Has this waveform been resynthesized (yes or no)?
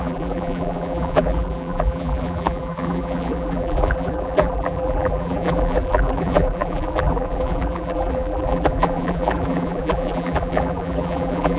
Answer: yes